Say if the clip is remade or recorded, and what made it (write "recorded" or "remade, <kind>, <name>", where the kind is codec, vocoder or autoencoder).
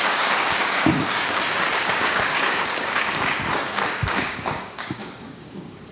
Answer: remade, codec, DAC